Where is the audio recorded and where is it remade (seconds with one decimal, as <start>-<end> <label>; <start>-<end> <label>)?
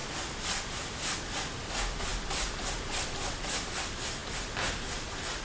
0.0-5.4 recorded